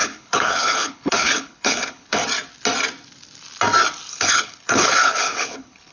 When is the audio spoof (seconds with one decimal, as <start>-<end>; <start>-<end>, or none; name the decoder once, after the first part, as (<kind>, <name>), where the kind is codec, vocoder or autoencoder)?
0.0-2.2 (codec, HILCodec); 4.1-5.9